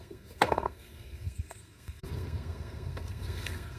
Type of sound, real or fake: fake